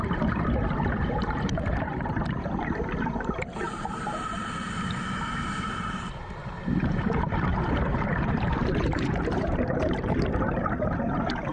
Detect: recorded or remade remade